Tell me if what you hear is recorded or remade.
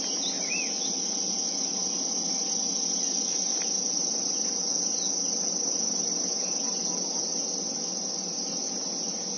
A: recorded